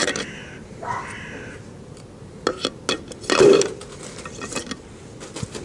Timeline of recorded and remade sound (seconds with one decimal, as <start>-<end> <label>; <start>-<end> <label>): 0.0-0.9 remade; 0.9-5.6 recorded